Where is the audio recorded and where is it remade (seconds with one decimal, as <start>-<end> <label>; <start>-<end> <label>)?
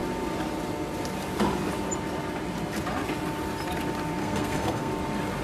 0.0-4.2 recorded; 4.2-4.9 remade; 4.9-5.4 recorded